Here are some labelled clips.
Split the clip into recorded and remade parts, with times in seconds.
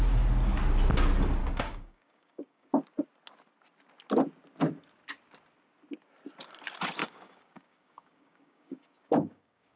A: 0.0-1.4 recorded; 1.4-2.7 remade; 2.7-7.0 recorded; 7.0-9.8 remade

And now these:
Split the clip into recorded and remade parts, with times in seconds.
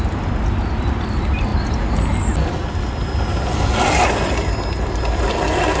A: 0.0-5.8 recorded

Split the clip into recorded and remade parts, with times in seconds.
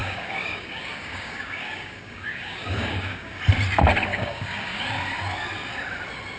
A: 0.0-3.4 remade; 3.4-4.1 recorded; 4.1-4.8 remade; 4.8-6.4 recorded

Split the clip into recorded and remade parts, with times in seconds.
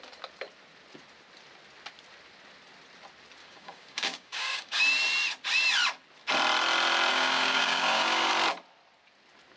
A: 0.0-3.4 recorded; 3.4-4.8 remade; 4.8-7.1 recorded; 7.1-8.3 remade; 8.3-9.6 recorded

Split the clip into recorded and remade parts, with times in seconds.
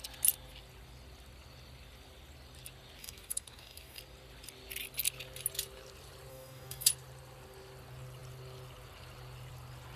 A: 0.0-3.0 recorded; 3.0-4.0 remade; 4.0-6.3 recorded; 6.3-6.9 remade; 6.9-10.0 recorded